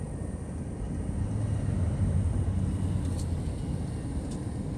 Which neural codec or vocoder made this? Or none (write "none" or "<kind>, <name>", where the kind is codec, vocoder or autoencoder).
none